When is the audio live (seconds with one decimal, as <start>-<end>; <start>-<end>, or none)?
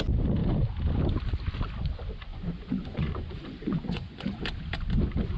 0.0-2.3; 4.4-5.4